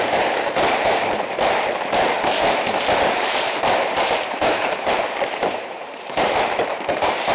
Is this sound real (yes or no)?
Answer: no